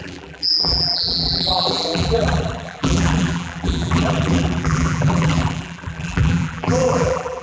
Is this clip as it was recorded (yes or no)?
no